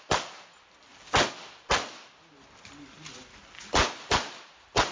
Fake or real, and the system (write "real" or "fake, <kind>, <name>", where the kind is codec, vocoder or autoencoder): real